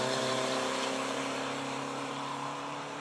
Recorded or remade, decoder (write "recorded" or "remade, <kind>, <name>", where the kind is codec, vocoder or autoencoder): remade, vocoder, BigVGAN v2